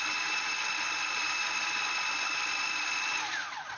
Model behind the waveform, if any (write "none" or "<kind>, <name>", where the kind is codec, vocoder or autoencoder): vocoder, BigVGAN v2